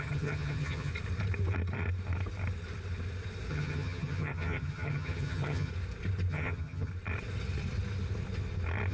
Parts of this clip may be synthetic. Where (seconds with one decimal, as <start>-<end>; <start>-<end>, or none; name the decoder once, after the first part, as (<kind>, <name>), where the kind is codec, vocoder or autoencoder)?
0.0-0.9 (vocoder, HiFi-GAN); 3.5-5.7; 6.3-6.9